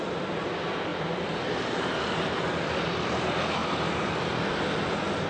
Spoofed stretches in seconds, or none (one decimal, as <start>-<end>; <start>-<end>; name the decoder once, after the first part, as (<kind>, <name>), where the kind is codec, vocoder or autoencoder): 0.9-1.9 (vocoder, BigVGAN v2); 3.6-4.5